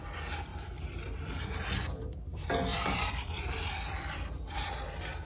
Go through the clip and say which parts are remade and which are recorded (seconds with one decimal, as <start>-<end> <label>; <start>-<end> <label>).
0.0-0.5 recorded; 0.5-1.4 remade; 1.4-2.7 recorded; 2.7-4.3 remade; 4.3-5.3 recorded